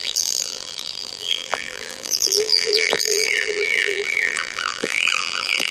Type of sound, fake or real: fake